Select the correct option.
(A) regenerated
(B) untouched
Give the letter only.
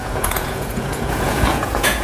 A